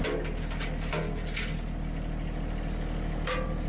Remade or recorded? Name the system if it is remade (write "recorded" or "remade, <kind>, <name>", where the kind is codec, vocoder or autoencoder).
recorded